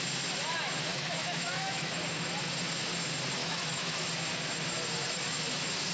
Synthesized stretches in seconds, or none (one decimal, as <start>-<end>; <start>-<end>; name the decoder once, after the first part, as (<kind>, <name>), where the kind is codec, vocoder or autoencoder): 0.9-1.9 (autoencoder, DAC-VAE); 3.4-4.1